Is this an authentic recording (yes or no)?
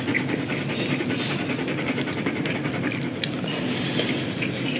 yes